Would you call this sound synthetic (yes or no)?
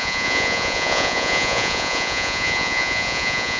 yes